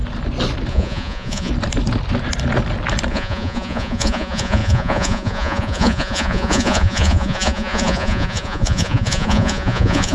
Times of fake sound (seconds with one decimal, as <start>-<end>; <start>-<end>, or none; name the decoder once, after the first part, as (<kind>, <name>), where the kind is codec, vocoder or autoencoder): 0.7-1.5 (vocoder, Vocos); 3.1-10.1